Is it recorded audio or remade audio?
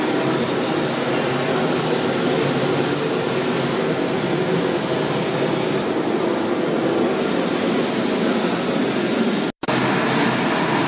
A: recorded